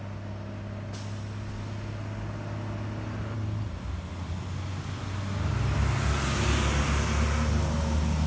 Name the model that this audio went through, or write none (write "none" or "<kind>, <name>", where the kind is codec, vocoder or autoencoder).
none